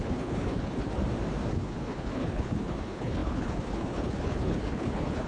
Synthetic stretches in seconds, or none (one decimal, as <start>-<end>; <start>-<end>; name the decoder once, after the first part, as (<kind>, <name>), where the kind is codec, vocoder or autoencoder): 0.0-1.0 (codec, HILCodec); 1.5-5.3